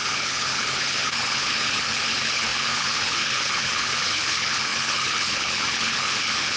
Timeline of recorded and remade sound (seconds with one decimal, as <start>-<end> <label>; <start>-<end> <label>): 0.0-6.6 remade